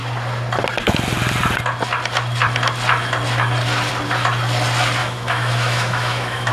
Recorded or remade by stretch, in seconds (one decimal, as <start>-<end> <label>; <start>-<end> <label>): 0.0-5.0 recorded; 5.0-6.5 remade